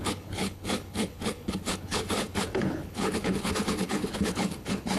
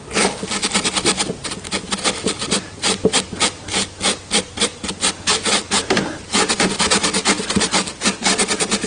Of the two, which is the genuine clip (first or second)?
second